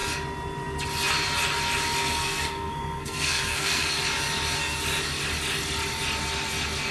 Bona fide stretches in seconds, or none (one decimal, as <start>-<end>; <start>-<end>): 0.0-2.0; 4.0-6.9

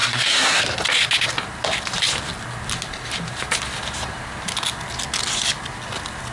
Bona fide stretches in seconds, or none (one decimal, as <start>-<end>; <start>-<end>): 0.6-6.3

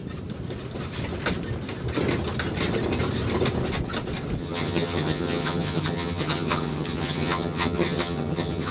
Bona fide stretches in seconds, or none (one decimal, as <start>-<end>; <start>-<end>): 0.0-4.4

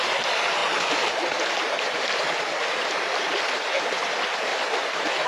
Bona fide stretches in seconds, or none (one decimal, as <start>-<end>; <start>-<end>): 0.0-0.6; 3.8-4.5